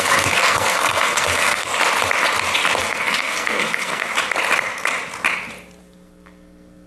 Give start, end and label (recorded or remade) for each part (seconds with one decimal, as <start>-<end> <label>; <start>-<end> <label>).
0.0-1.7 remade; 1.7-2.8 recorded; 2.8-4.1 remade; 4.1-5.8 recorded; 5.8-6.9 remade